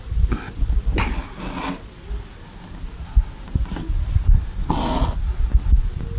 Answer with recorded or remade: recorded